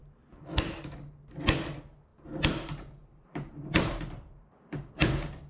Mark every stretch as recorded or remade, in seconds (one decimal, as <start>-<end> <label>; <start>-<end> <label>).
0.0-2.1 recorded; 2.1-4.9 remade; 4.9-5.5 recorded